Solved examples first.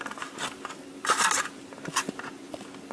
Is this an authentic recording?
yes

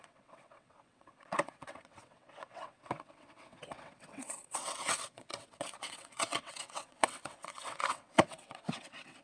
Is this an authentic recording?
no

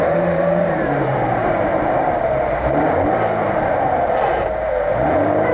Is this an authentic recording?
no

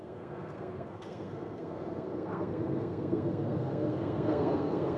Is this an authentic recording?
no